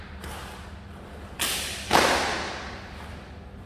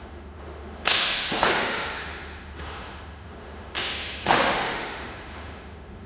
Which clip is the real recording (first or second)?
first